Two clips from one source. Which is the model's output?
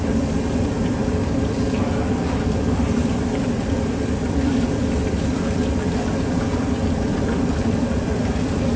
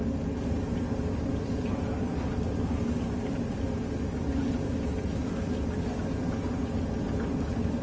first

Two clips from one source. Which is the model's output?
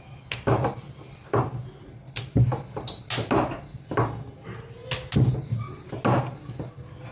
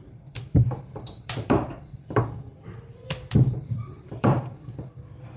second